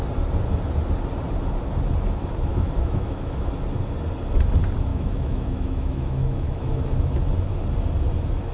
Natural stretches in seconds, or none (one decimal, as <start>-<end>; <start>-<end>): 0.0-2.5; 3.5-4.9; 6.9-8.5